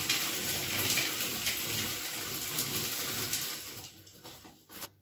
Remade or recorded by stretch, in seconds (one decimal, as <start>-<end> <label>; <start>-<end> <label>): 0.0-5.0 recorded